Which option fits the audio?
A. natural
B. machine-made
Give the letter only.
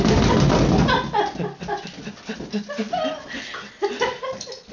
A